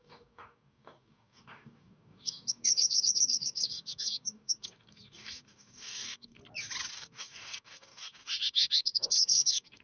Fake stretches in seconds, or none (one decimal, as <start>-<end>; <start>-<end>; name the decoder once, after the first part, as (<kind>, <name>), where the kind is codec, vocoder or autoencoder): 0.0-6.4 (codec, DAC); 6.9-9.8